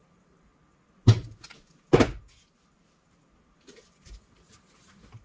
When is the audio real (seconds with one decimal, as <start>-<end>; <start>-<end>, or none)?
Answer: 0.5-3.6